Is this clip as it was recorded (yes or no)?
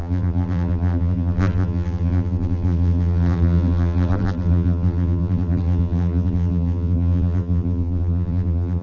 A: no